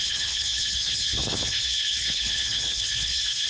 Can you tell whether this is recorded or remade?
remade